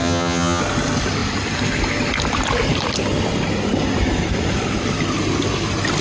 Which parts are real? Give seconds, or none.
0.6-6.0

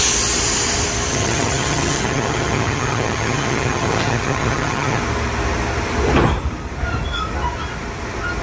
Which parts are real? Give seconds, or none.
0.0-1.1; 5.0-8.4

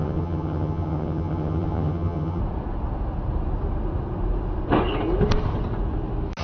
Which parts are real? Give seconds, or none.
2.4-6.4

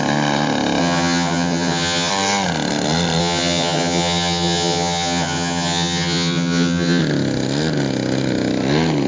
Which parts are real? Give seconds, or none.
0.0-0.8; 2.1-3.2; 7.0-9.1

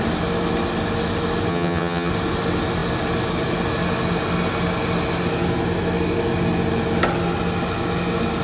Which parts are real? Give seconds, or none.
0.0-1.5; 2.1-8.4

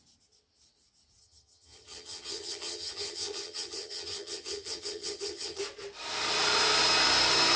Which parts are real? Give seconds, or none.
0.0-1.2; 5.6-7.6

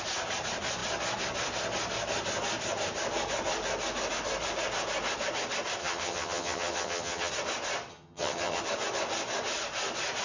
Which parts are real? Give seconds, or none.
0.0-5.8; 7.3-7.9; 8.6-10.2

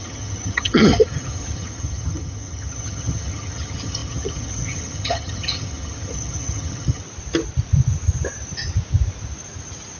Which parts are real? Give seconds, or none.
7.0-10.0